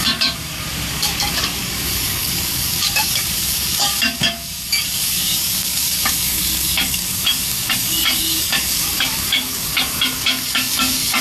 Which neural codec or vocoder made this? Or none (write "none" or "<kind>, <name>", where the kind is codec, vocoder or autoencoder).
codec, DAC